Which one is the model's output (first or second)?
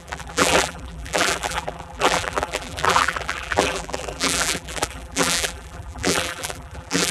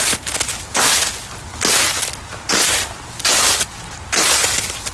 first